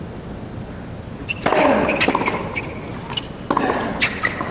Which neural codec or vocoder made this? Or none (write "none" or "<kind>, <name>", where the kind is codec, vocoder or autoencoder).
none